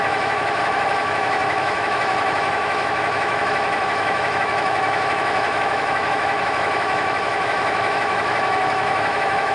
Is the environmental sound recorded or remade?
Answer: remade